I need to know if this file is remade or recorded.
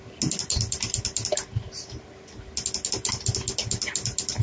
recorded